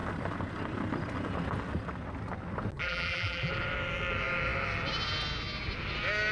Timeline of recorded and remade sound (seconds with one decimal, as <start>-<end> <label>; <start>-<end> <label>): 0.0-2.8 recorded; 2.8-3.5 remade; 3.5-6.3 recorded